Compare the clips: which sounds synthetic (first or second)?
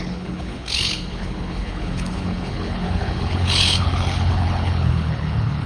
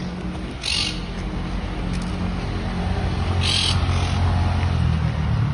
first